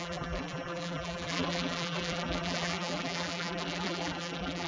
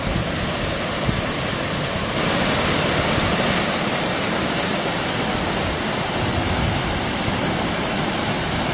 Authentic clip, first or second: second